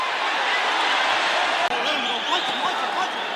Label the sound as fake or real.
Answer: real